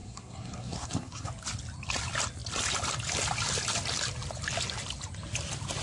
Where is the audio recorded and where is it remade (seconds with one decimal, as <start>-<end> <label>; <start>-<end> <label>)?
0.0-1.3 remade; 1.3-5.8 recorded